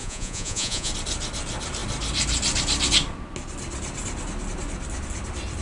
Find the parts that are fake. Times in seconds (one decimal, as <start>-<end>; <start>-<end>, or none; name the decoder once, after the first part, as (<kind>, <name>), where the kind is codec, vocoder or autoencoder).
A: 0.0-0.9 (vocoder, Vocos)